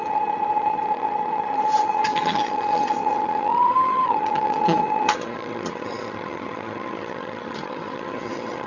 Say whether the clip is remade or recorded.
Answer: remade